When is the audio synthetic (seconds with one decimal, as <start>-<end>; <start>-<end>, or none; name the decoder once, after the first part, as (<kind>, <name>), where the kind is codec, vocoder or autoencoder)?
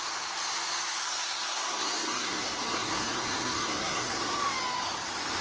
1.0-4.2 (codec, SNAC)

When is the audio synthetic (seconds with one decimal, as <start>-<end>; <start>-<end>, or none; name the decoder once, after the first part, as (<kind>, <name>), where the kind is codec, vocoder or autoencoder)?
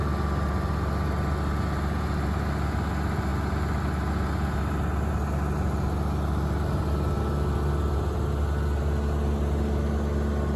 none